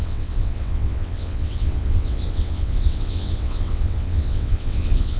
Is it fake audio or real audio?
fake